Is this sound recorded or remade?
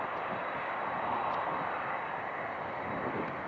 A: recorded